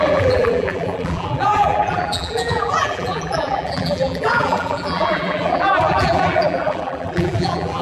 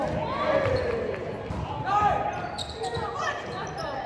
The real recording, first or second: second